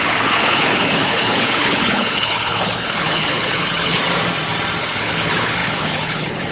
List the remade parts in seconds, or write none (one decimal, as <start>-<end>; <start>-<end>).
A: 0.0-4.0; 4.8-6.5